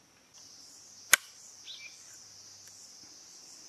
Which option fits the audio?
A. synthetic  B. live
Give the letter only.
B